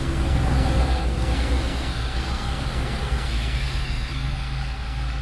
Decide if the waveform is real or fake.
fake